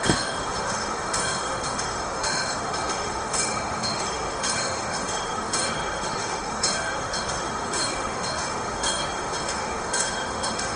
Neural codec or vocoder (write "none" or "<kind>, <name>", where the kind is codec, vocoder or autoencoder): autoencoder, DAC-VAE